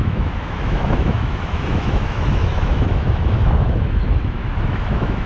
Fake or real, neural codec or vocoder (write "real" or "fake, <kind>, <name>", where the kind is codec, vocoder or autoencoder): fake, autoencoder, DAC-VAE